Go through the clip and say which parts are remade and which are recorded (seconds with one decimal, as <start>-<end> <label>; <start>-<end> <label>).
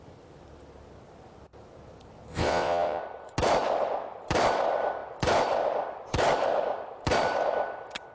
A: 0.0-2.3 recorded; 2.3-3.0 remade; 3.0-8.1 recorded